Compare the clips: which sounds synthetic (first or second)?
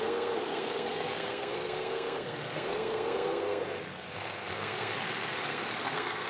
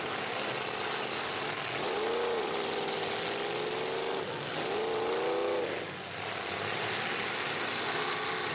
first